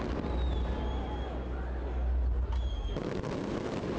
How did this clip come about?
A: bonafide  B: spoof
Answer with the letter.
A